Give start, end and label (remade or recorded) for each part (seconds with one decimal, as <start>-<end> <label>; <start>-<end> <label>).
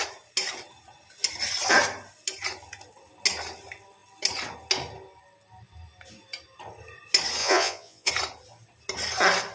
0.0-7.4 recorded; 7.4-8.1 remade; 8.1-9.5 recorded